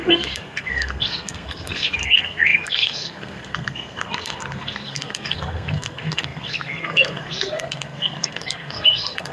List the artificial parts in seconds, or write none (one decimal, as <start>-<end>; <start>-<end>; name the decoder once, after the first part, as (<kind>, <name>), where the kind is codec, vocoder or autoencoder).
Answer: 0.0-9.3 (codec, SNAC)